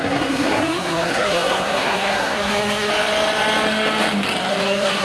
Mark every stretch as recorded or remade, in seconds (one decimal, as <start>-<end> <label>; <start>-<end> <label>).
0.0-2.9 remade; 2.9-4.5 recorded; 4.5-5.0 remade